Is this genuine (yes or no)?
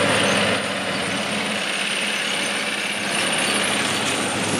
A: yes